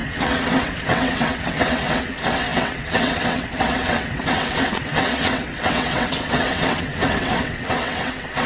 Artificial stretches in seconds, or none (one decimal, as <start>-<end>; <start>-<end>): 0.0-8.5